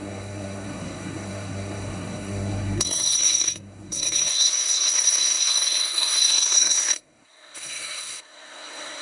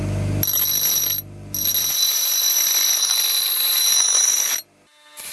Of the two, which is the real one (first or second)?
second